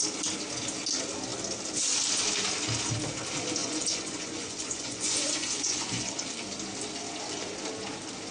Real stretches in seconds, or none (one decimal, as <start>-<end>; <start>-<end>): 0.0-3.6; 6.1-8.3